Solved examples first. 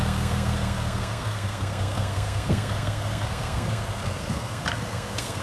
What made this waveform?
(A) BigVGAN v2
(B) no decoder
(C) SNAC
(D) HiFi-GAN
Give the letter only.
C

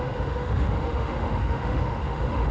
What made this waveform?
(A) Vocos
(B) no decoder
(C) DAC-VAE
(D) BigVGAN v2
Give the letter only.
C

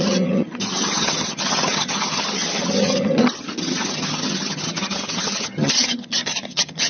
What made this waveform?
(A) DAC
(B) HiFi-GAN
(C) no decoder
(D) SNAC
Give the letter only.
B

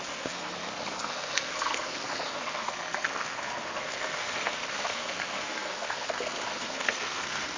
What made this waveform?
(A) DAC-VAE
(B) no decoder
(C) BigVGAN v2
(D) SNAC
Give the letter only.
D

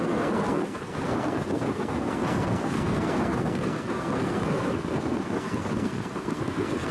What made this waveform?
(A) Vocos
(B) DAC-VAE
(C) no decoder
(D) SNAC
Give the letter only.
D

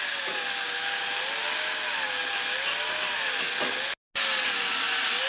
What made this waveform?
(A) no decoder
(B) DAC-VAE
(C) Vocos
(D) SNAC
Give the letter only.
A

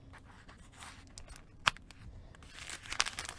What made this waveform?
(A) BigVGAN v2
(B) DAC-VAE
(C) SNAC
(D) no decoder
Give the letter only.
D